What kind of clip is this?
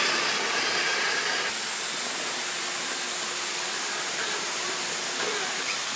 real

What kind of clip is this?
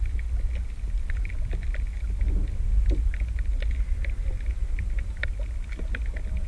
real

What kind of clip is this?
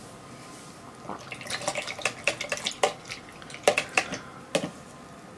real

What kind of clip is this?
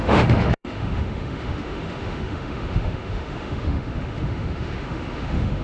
fake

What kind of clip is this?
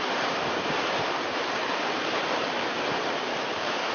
fake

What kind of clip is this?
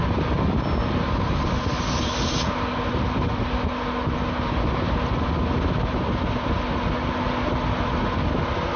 real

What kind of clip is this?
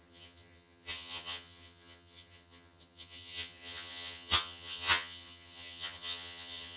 fake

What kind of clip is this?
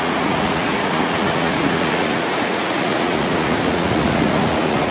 fake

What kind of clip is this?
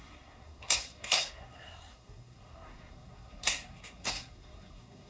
fake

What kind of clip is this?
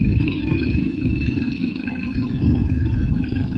fake